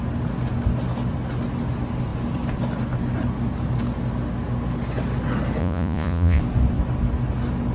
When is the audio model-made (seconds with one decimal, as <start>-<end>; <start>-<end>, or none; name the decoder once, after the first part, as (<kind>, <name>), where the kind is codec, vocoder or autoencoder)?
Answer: 5.6-6.4 (vocoder, Vocos)